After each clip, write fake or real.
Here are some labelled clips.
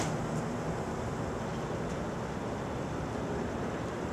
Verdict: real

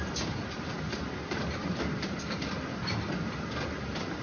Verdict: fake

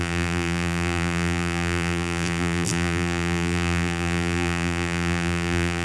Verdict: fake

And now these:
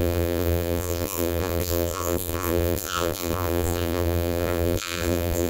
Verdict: fake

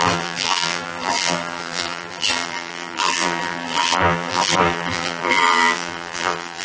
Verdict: fake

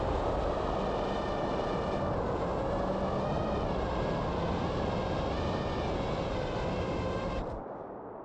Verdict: real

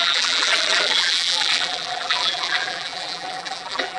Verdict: fake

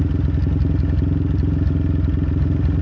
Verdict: real